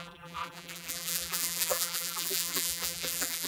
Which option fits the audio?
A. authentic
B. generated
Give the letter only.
B